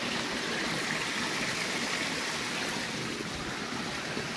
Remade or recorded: recorded